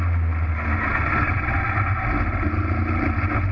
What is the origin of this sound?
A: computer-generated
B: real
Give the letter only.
B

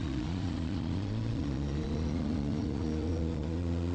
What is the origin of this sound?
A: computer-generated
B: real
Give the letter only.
A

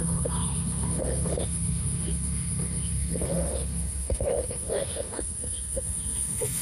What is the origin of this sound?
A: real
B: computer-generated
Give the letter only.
B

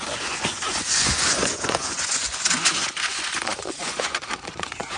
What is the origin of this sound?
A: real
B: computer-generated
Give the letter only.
B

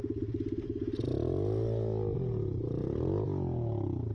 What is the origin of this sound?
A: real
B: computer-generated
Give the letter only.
A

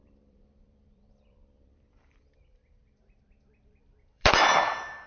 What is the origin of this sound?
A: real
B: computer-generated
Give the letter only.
B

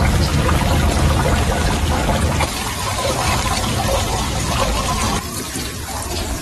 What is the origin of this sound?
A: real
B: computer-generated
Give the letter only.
A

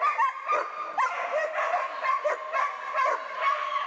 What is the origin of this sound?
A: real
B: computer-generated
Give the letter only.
B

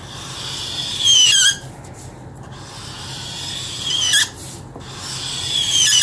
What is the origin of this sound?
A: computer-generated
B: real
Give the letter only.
B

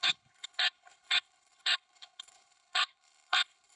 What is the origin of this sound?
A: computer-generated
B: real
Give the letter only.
A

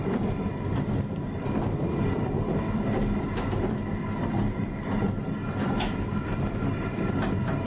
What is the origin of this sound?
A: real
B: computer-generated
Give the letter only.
B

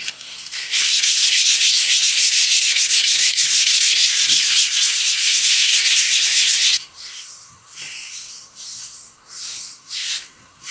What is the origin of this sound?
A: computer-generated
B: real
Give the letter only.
A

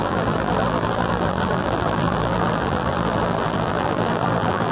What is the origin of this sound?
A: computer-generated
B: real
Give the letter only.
A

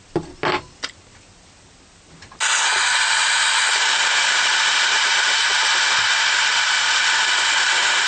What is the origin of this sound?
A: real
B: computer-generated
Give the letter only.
A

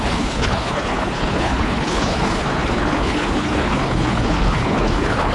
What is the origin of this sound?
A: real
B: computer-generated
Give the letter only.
B